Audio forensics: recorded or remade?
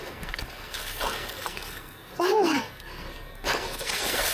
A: remade